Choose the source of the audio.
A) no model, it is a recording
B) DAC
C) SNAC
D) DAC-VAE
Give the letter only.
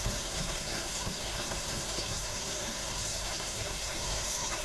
C